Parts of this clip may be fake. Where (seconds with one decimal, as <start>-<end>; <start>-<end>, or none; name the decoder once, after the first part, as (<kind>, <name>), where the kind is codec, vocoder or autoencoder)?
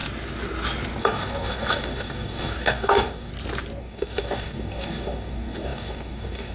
1.0-3.3 (codec, DAC); 3.8-6.5